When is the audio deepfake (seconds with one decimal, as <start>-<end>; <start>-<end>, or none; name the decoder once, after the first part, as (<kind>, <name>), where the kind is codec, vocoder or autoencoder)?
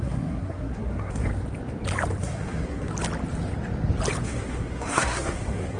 0.0-1.3 (codec, SNAC); 2.2-2.9; 4.2-5.8